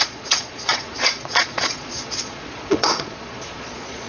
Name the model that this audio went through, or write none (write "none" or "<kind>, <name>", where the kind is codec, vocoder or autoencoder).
vocoder, Vocos